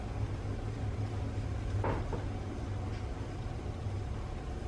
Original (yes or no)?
yes